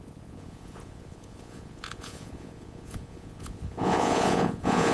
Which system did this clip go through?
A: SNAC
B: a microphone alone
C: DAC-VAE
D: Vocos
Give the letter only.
D